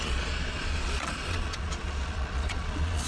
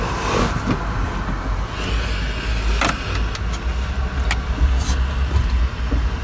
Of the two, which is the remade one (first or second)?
first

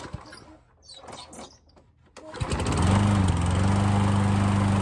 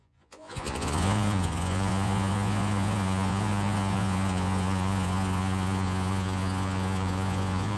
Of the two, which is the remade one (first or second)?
second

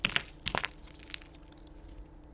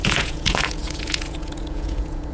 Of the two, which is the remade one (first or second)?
second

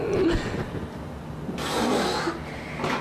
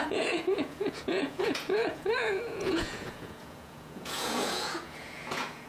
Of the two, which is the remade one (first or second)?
second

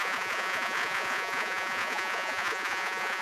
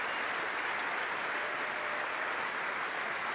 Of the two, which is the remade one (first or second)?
first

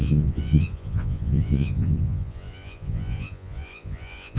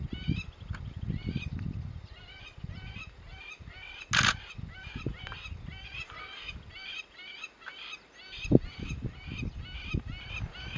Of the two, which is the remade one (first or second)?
first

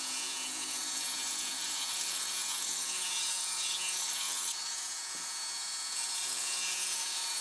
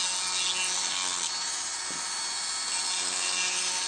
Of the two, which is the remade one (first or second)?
first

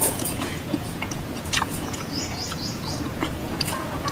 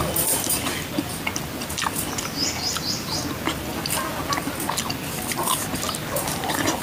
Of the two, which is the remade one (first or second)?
first